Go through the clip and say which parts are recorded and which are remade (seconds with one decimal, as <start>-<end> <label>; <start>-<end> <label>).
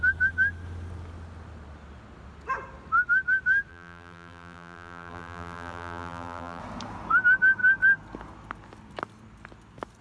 0.0-3.7 recorded; 3.7-6.6 remade; 6.6-10.0 recorded